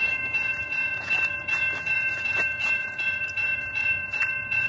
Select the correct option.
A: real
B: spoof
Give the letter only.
B